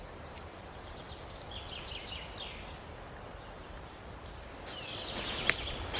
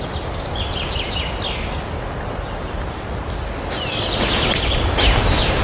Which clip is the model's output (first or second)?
first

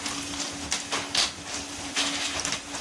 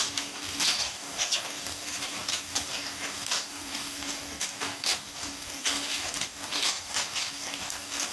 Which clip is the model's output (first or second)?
second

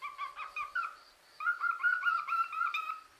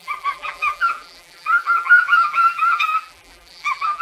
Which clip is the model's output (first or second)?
second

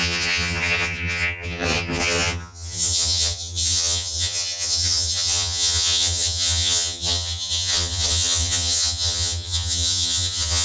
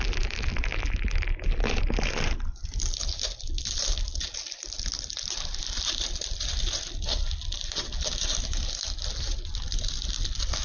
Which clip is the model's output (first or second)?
first